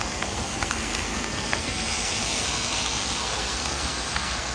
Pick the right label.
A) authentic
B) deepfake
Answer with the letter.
B